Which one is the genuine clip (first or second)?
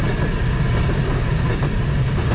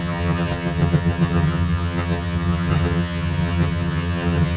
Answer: first